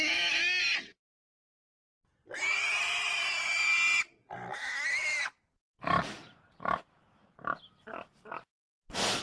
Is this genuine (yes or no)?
yes